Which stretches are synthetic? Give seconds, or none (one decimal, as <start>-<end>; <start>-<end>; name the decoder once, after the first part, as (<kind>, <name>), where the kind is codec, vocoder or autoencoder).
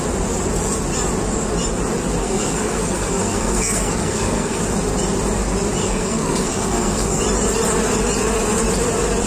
2.2-4.6 (codec, SNAC); 5.8-7.2